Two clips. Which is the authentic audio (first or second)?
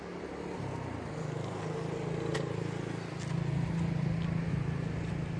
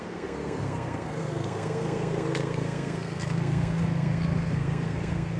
first